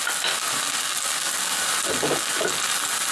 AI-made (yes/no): no